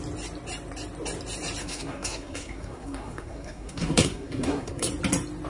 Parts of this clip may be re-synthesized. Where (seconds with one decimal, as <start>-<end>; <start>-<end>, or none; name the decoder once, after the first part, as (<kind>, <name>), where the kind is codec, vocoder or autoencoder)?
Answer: 1.6-4.9 (codec, SNAC)